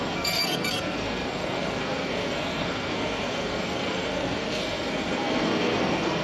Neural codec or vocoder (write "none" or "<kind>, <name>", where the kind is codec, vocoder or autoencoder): codec, SNAC